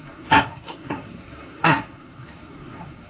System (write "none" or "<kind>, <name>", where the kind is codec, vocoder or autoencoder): codec, SNAC